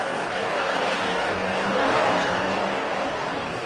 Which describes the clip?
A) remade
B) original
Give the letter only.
A